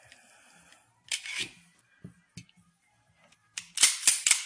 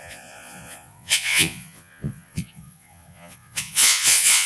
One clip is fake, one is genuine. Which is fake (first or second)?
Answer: second